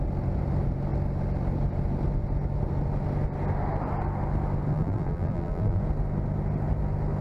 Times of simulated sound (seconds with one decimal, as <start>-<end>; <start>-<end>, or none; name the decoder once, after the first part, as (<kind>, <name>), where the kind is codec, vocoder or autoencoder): 4.7-5.8 (vocoder, BigVGAN v2)